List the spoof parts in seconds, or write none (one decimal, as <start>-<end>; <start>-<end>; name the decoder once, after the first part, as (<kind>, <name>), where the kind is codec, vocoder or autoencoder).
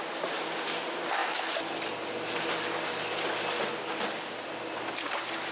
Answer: none